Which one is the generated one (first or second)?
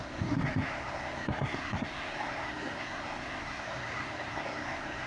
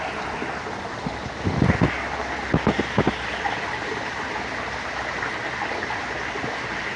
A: first